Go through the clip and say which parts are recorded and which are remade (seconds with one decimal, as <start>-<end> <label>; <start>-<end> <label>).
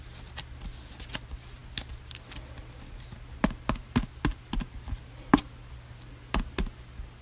0.0-7.2 recorded